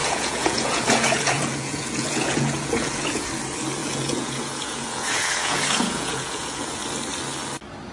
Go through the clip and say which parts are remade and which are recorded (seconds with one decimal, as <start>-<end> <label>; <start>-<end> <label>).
0.0-3.3 remade; 3.3-3.8 recorded; 3.8-6.8 remade; 6.8-7.9 recorded